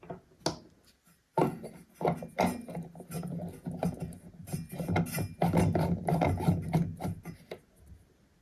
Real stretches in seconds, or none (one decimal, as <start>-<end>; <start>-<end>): 0.0-8.4